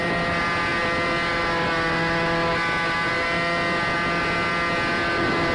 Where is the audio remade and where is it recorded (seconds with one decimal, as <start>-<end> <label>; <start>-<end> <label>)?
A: 0.0-5.5 recorded